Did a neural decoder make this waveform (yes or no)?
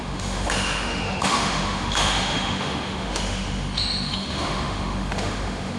yes